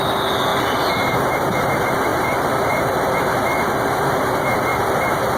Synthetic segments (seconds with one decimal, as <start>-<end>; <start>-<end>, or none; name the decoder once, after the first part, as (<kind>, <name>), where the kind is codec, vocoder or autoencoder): 2.1-4.2 (vocoder, BigVGAN v2); 4.7-5.4